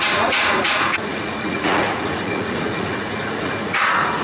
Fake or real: fake